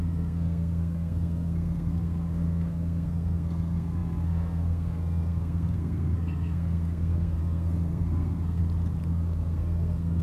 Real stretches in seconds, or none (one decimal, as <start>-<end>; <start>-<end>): 8.6-9.1

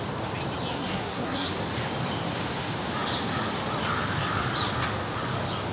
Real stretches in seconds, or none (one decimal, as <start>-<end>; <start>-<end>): 0.0-0.7; 1.5-5.7

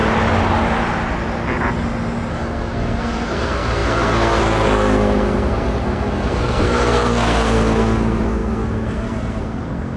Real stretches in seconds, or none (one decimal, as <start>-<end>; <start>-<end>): 0.0-2.3

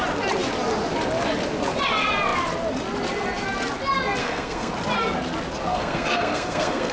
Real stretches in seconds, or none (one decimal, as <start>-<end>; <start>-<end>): 0.0-4.2; 4.7-5.7

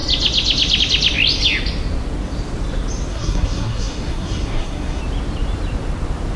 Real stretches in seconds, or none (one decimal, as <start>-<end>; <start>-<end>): 0.0-3.1; 5.0-6.4